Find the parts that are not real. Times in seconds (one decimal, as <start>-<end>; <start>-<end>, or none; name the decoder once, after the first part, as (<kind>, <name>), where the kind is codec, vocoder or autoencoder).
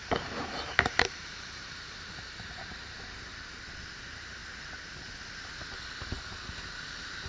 0.0-3.3 (vocoder, BigVGAN v2); 3.9-4.4; 6.6-7.3